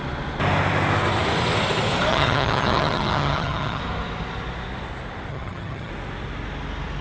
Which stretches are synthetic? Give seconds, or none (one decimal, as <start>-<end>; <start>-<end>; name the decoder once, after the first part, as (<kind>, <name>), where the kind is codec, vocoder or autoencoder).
2.1-3.8 (vocoder, HiFi-GAN); 5.3-5.9